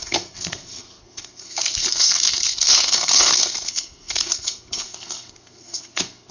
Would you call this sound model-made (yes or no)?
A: yes